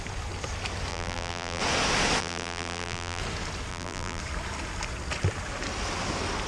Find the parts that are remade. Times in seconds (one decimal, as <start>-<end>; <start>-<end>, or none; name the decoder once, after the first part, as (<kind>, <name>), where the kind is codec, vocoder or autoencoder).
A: 0.9-1.6 (vocoder, BigVGAN v2); 2.2-3.2; 3.7-4.2